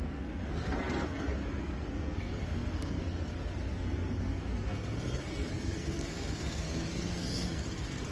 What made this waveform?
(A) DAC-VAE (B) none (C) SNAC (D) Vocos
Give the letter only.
C